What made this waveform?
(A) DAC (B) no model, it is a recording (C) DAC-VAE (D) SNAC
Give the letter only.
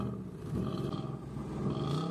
B